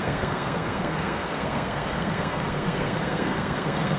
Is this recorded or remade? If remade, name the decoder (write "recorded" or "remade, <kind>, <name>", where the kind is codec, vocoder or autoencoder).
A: remade, codec, SNAC